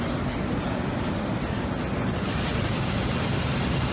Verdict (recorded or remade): recorded